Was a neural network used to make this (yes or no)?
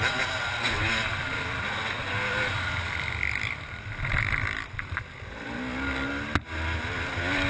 no